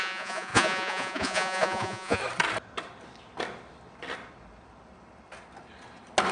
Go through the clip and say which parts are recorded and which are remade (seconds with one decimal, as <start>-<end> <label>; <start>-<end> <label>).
0.0-2.2 remade; 2.2-6.3 recorded